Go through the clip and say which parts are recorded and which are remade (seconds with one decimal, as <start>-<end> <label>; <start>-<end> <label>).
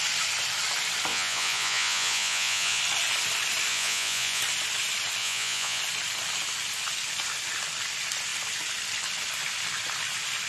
0.0-1.1 recorded; 1.1-2.8 remade; 2.8-3.7 recorded; 3.7-4.4 remade; 4.4-5.2 recorded; 5.2-5.8 remade; 5.8-10.5 recorded